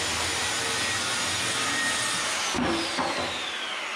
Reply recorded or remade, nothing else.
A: recorded